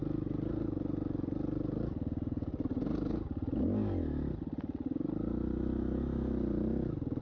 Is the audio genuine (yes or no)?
yes